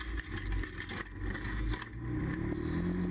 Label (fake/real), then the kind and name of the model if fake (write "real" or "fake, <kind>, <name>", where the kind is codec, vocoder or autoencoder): real